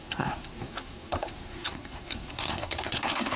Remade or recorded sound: remade